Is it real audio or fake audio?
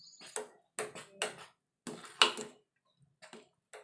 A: real